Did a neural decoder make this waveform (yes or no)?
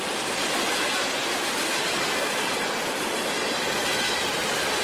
no